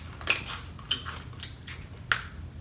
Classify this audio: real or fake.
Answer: real